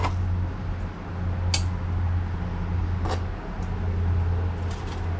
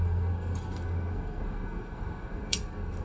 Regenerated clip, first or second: second